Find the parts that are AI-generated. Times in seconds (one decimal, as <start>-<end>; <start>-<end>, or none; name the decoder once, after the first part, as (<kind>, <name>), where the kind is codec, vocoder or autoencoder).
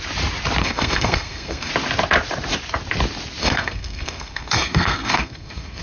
0.6-1.7 (codec, SNAC); 3.4-5.8